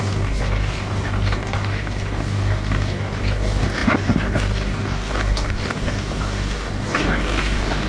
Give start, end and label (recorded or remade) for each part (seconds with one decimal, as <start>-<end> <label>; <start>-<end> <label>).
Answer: 0.0-7.9 remade